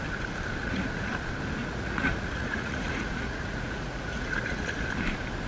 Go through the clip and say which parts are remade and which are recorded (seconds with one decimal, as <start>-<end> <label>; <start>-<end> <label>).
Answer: 0.0-0.6 recorded; 0.6-1.1 remade; 1.1-1.6 recorded; 1.6-4.7 remade; 4.7-5.5 recorded